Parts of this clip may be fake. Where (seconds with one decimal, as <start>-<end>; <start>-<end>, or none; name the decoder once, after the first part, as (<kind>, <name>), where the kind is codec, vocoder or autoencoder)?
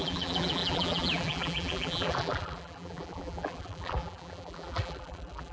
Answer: 0.0-5.5 (vocoder, BigVGAN v2)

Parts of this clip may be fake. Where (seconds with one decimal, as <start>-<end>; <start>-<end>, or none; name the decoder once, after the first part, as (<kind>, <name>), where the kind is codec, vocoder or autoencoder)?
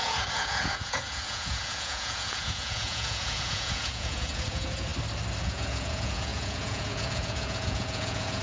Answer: 0.0-4.9 (vocoder, Vocos); 5.4-8.4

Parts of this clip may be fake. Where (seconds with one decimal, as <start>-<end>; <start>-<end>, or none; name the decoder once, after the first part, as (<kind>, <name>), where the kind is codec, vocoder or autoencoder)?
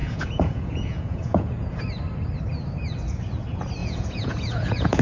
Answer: 0.0-1.7 (vocoder, Vocos); 3.8-5.0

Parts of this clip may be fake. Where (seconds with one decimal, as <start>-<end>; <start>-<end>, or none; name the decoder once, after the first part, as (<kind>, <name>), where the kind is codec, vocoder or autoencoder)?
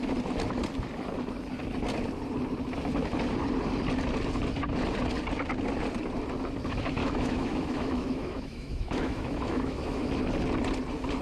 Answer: 7.0-10.1 (autoencoder, DAC-VAE)